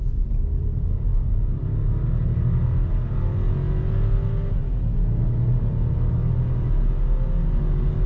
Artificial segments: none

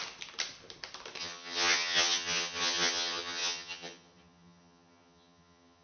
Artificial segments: 1.2-5.8 (vocoder, HiFi-GAN)

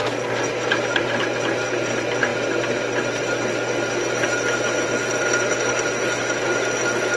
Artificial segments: none

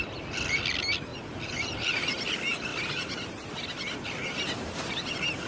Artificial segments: 1.1-1.8 (vocoder, BigVGAN v2)

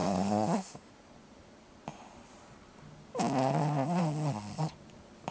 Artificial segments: 0.0-0.9 (autoencoder, DAC-VAE)

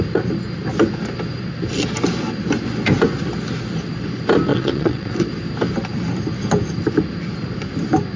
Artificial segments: 4.5-5.2 (vocoder, WaveNeXt)